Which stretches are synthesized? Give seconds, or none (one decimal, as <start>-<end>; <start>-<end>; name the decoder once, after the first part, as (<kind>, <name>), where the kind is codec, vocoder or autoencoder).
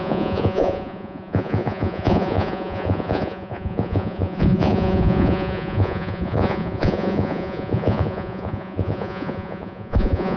0.0-10.4 (vocoder, Vocos)